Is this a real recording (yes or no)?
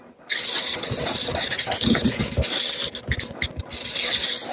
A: yes